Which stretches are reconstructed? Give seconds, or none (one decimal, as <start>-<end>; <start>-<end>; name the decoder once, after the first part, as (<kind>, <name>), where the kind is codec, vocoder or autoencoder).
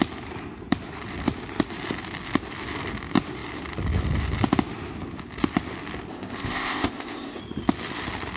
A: 6.1-7.4 (codec, ZipCodec)